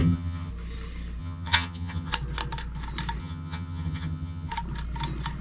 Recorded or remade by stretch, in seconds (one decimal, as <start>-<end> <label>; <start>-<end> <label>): 0.0-0.5 remade; 0.5-1.2 recorded; 1.2-2.1 remade; 2.1-3.2 recorded; 3.2-4.5 remade; 4.5-5.4 recorded

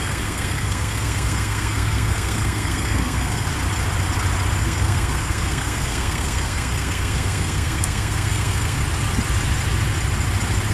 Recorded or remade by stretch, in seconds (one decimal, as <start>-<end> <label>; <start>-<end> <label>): 0.0-3.5 remade; 3.5-4.6 recorded; 4.6-8.8 remade; 8.8-10.7 recorded